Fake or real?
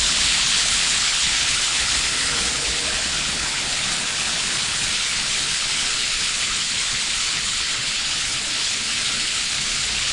fake